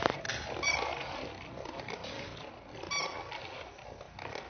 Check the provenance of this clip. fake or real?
real